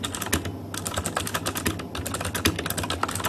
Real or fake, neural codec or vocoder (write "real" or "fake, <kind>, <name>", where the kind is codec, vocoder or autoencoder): real